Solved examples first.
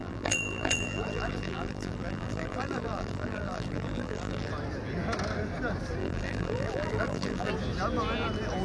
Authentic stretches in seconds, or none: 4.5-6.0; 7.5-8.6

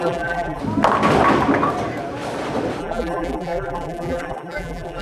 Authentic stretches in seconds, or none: 0.6-2.8

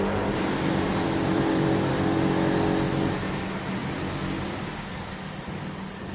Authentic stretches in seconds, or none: 0.0-0.9; 1.9-6.1

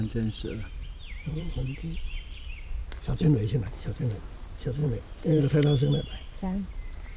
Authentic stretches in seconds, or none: 1.8-4.2

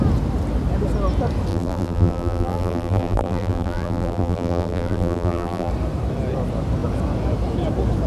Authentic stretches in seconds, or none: 0.0-1.5; 5.7-8.1

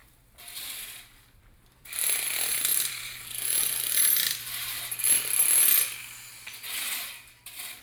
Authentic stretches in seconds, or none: 1.9-2.7; 5.1-7.8

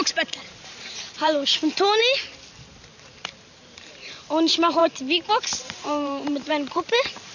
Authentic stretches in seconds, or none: 2.0-2.6